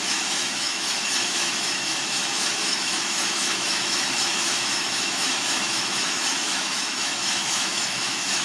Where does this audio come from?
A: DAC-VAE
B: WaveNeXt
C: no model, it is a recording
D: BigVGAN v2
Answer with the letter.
A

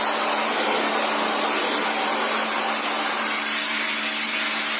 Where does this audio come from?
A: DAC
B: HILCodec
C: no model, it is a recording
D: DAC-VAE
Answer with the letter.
C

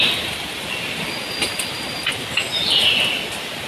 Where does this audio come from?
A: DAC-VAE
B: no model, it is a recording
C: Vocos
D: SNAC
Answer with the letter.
B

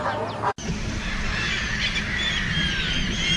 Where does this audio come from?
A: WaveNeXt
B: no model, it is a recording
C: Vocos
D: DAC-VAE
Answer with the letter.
B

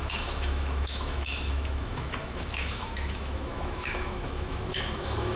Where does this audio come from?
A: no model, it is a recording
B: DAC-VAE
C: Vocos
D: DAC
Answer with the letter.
B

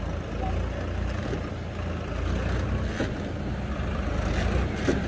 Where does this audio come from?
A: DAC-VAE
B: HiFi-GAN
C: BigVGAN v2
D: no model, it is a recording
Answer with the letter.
D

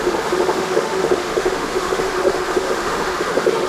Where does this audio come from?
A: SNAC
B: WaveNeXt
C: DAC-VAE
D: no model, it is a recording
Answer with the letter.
C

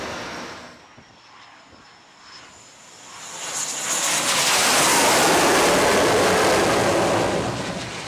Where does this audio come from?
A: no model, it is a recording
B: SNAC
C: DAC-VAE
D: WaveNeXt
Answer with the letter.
A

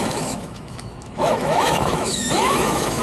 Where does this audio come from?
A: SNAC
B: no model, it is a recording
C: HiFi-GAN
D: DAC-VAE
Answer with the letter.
D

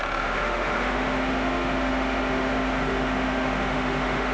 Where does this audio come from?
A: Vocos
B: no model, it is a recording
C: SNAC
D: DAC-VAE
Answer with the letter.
D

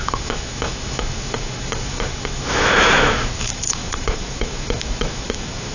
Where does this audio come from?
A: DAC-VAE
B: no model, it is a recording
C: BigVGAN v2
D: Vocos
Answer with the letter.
A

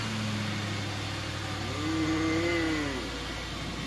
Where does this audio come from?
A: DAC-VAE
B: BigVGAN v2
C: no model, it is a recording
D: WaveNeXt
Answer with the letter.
C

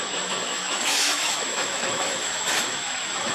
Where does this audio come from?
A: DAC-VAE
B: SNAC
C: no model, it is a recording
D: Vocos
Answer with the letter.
A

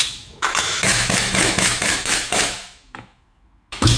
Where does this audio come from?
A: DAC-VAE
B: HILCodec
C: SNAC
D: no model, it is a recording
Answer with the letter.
A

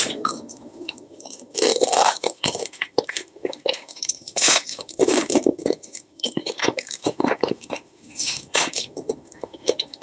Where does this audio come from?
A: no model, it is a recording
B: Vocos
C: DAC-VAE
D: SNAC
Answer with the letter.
C